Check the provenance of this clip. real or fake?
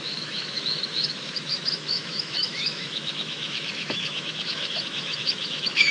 fake